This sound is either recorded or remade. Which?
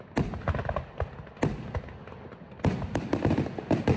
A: recorded